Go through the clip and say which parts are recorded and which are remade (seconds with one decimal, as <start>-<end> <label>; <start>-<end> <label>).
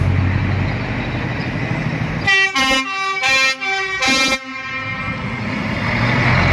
0.0-6.5 recorded